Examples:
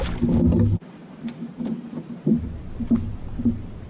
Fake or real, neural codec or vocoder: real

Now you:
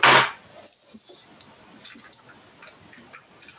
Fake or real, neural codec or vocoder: real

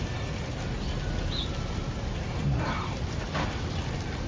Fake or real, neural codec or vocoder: real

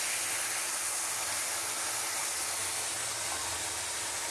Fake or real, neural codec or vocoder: real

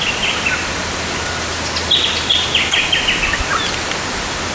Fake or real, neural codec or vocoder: real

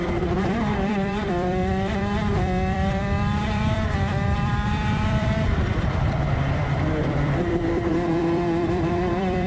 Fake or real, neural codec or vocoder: fake, vocoder, BigVGAN v2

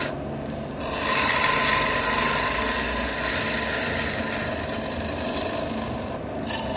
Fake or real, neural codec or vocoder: real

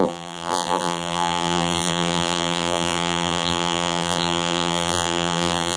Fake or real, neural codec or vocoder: fake, vocoder, BigVGAN v2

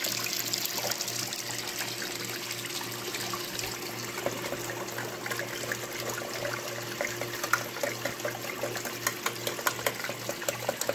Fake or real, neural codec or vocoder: real